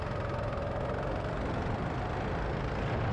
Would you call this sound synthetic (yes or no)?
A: no